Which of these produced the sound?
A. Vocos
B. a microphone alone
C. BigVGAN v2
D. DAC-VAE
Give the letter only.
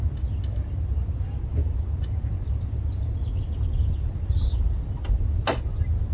B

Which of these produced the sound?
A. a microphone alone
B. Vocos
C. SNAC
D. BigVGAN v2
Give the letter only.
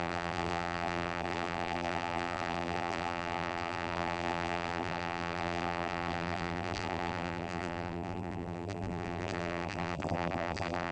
D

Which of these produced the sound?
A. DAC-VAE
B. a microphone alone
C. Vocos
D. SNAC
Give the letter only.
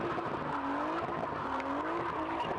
B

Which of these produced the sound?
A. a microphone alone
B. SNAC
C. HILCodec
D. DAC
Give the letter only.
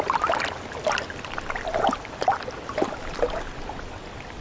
A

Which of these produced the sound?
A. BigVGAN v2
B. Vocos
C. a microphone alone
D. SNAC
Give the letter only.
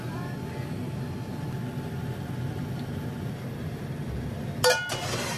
C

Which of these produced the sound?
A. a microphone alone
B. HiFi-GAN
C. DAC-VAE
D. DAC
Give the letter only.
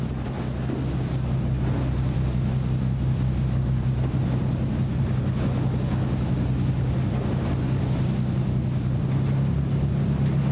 A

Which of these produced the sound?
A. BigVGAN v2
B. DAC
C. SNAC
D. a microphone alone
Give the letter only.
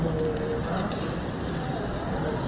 D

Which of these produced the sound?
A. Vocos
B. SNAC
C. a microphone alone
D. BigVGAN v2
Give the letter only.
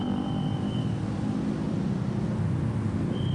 C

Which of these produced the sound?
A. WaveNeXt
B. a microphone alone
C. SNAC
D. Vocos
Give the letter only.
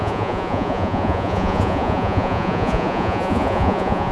D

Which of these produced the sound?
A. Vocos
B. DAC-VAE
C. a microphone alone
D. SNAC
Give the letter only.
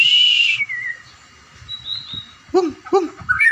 C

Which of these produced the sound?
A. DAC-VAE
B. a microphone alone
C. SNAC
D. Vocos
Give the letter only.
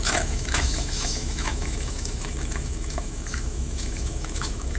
A